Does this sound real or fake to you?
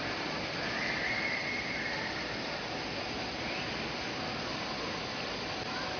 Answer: real